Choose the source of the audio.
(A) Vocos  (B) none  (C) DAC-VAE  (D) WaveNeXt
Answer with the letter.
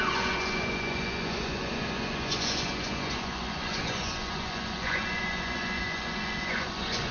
A